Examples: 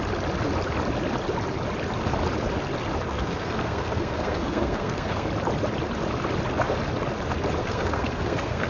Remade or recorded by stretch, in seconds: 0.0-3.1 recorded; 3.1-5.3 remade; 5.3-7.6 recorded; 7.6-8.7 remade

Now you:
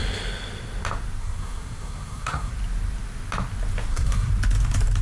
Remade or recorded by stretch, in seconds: 0.0-1.2 recorded; 1.2-2.5 remade; 2.5-3.9 recorded; 3.9-4.3 remade; 4.3-5.0 recorded

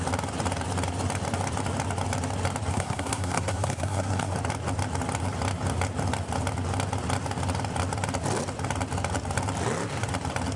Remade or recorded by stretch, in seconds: 0.0-2.7 recorded; 2.7-4.3 remade; 4.3-10.6 recorded

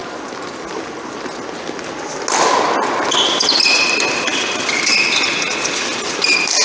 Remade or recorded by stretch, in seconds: 0.0-6.6 recorded

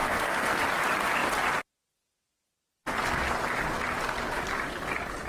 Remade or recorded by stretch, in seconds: 0.0-0.6 remade; 0.6-5.3 recorded

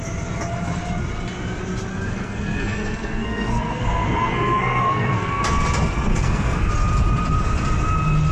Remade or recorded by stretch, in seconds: 0.0-1.9 recorded; 1.9-5.4 remade; 5.4-6.1 recorded; 6.1-6.7 remade; 6.7-8.3 recorded

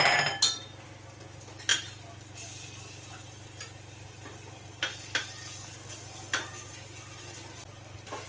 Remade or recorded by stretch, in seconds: 0.0-8.3 recorded

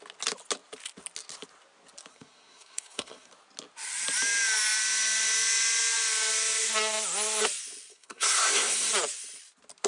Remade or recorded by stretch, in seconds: 0.0-2.1 recorded; 2.1-3.3 remade; 3.3-7.9 recorded; 7.9-8.9 remade; 8.9-9.9 recorded